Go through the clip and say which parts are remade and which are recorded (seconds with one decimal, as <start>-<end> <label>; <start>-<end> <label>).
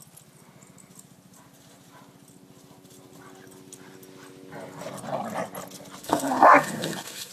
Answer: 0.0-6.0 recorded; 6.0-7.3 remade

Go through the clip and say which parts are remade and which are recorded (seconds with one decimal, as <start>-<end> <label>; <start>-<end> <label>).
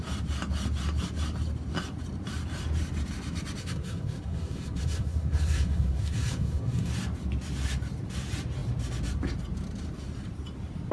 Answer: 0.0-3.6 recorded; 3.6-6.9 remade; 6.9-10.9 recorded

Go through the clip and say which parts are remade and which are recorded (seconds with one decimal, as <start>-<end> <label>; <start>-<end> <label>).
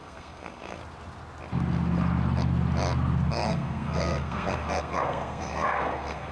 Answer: 0.0-0.8 remade; 0.8-3.3 recorded; 3.3-6.3 remade